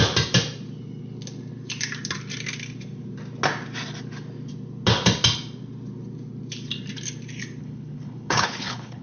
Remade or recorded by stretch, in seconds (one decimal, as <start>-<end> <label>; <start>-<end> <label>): 0.0-7.6 recorded; 7.6-9.0 remade